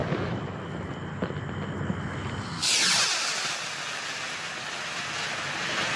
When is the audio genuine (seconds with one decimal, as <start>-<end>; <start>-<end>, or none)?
0.8-6.0

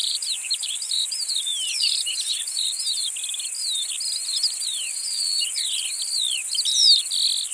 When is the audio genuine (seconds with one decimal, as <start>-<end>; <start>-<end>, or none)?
3.2-4.2; 5.8-7.5

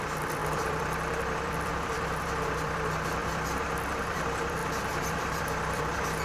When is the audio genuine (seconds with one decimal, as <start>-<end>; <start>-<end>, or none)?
none

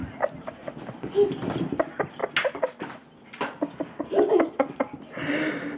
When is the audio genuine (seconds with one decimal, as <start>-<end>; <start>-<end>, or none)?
0.0-5.8

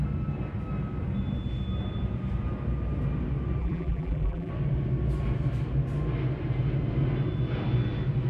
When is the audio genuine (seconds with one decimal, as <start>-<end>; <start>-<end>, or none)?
0.0-3.6; 4.5-8.3

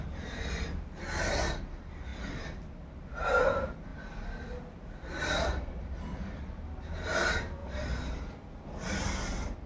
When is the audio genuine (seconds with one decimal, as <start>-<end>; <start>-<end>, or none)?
0.0-3.9; 6.4-7.6; 8.9-9.7

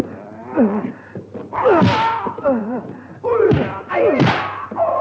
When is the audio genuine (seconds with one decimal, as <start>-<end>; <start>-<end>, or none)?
0.0-2.6; 3.1-5.0

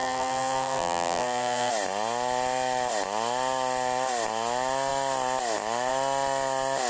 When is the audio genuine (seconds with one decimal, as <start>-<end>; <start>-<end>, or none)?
1.7-6.9